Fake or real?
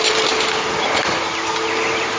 real